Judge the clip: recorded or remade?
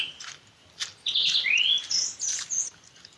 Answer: recorded